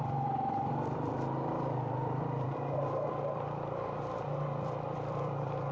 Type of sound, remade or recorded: remade